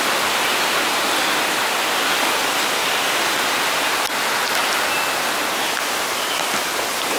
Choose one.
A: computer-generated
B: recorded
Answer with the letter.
B